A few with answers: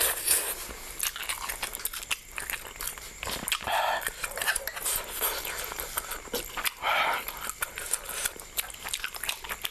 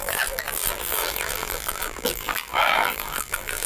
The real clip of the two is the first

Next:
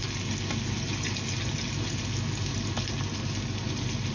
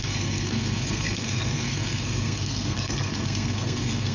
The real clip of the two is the first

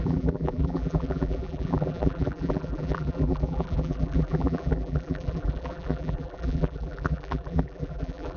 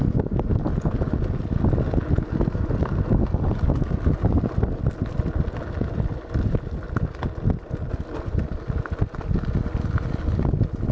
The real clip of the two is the second